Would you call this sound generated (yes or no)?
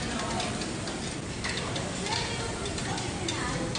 no